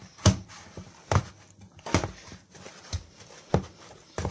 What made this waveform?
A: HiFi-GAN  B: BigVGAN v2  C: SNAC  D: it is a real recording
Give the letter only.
D